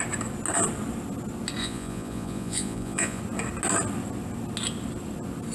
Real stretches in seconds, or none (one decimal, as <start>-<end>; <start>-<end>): 0.0-1.6; 3.2-5.5